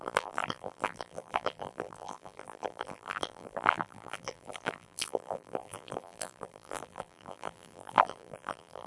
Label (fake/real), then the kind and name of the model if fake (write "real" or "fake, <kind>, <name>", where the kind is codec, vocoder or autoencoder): fake, vocoder, BigVGAN v2